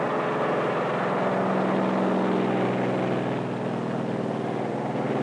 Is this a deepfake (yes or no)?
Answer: no